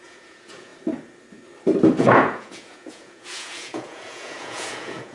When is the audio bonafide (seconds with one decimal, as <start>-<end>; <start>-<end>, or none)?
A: 0.7-2.0